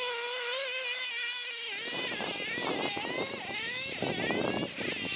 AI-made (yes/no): no